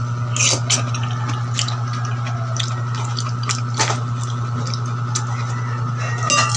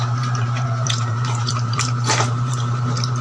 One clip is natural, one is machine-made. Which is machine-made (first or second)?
second